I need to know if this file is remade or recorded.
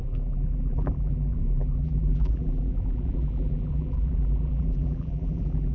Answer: remade